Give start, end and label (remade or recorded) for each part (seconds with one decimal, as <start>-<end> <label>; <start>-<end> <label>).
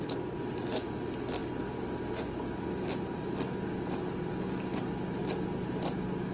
0.0-6.3 recorded